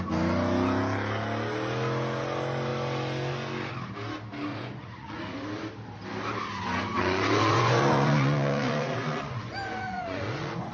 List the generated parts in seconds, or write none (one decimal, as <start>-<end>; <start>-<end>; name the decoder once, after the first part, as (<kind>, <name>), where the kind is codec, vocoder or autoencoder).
4.5-5.2 (vocoder, Vocos); 7.0-10.7